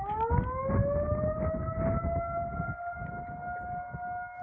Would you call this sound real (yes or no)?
yes